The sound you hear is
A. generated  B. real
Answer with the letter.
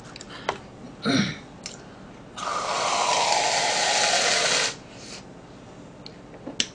B